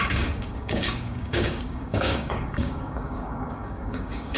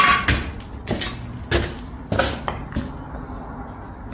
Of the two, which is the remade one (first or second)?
first